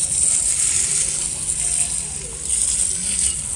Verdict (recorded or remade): recorded